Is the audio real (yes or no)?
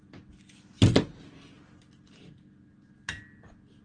yes